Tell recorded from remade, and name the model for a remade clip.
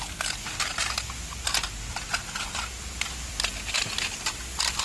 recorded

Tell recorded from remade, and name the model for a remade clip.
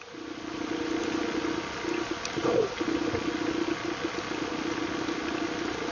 recorded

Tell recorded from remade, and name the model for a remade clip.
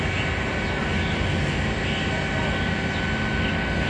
recorded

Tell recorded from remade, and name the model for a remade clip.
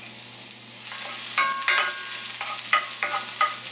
recorded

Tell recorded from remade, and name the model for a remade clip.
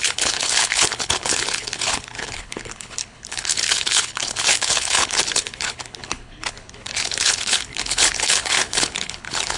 remade, codec, HILCodec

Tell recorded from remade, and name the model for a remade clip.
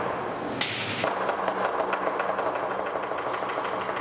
recorded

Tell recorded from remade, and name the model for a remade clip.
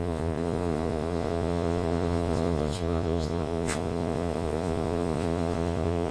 remade, vocoder, Vocos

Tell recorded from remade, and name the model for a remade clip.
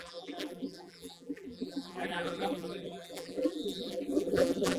remade, vocoder, BigVGAN v2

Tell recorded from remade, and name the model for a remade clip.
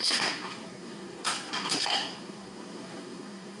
remade, codec, SNAC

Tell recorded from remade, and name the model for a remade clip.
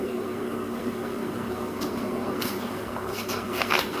remade, codec, SNAC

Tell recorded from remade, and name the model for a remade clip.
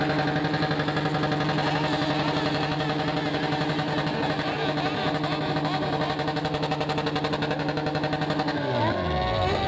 recorded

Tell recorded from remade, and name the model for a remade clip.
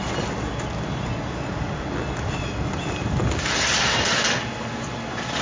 recorded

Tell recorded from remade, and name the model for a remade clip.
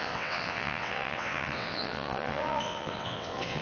remade, vocoder, WaveNeXt